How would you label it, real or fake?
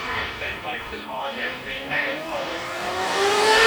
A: fake